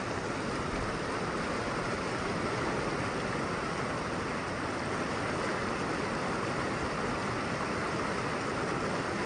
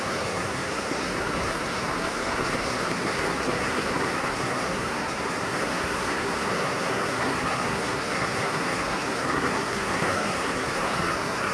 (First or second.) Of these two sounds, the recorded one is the first